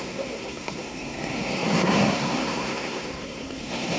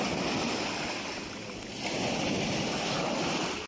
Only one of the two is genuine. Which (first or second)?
second